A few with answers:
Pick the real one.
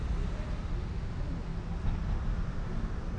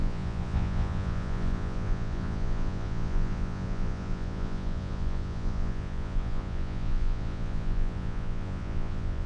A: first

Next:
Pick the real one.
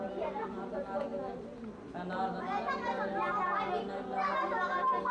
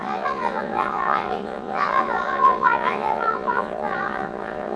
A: first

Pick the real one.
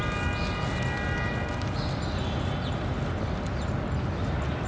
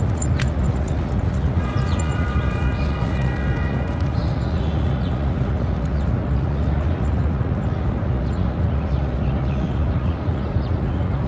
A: first